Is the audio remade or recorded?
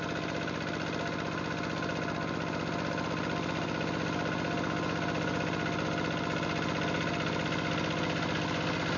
recorded